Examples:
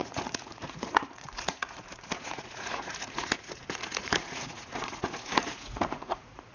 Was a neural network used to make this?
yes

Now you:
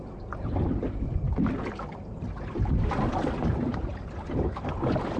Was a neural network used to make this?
no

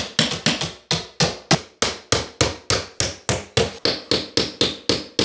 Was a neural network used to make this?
no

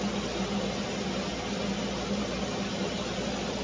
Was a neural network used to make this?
no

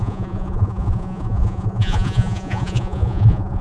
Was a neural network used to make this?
yes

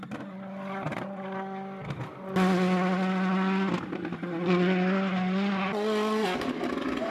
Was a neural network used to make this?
no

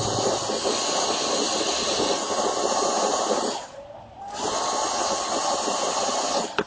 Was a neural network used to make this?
no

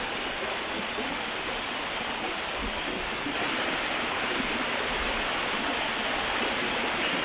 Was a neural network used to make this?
no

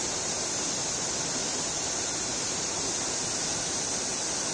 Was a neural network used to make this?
no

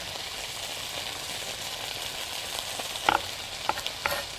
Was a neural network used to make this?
no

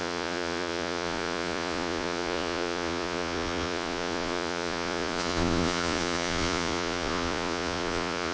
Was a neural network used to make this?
yes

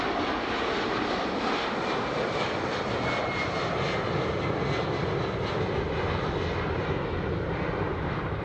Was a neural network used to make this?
no